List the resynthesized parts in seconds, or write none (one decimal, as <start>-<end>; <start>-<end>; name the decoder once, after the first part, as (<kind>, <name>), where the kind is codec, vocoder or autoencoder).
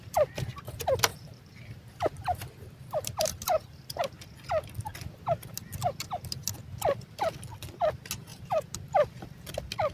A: 1.1-4.0 (vocoder, BigVGAN v2); 4.9-5.5; 8.3-9.2